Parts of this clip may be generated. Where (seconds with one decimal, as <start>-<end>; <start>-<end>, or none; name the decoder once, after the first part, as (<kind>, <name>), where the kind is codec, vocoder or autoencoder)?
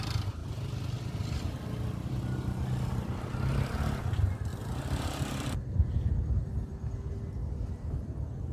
7.4-8.0 (vocoder, BigVGAN v2)